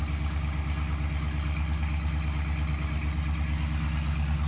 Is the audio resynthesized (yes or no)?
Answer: no